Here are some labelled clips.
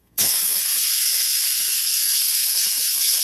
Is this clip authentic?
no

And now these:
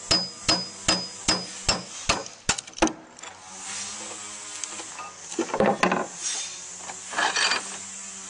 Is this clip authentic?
yes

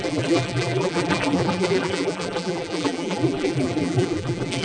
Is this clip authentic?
no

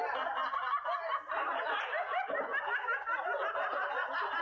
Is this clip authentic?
no